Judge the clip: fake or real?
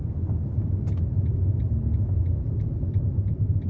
real